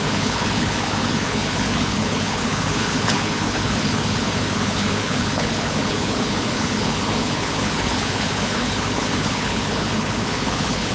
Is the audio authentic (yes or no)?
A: no